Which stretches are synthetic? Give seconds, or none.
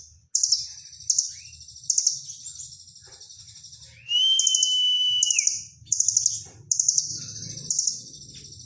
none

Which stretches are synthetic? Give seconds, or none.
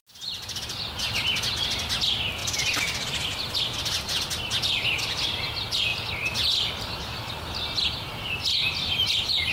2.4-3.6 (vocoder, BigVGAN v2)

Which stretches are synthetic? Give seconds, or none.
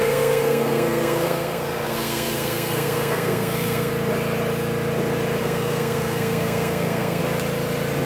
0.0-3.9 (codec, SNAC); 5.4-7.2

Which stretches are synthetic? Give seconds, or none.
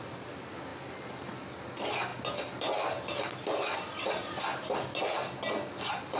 none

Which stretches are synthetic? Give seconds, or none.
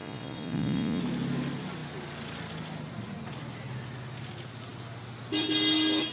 0.0-1.0 (vocoder, Vocos)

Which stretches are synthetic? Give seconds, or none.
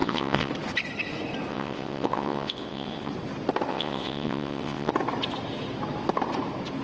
0.0-0.5 (vocoder, WaveNeXt); 1.5-3.1; 3.7-4.9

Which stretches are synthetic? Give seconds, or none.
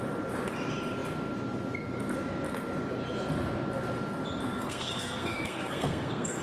4.6-6.4 (codec, SNAC)